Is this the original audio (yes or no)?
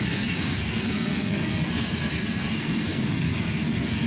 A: no